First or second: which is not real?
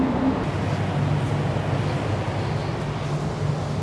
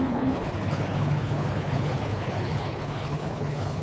second